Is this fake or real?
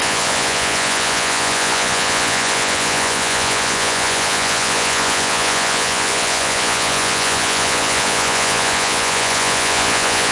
fake